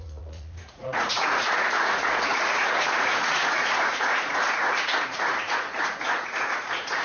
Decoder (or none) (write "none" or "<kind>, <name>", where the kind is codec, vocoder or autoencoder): vocoder, Vocos